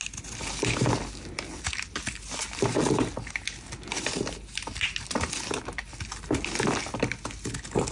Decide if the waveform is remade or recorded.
recorded